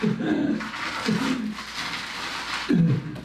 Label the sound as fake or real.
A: real